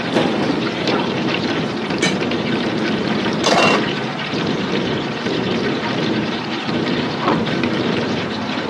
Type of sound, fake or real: fake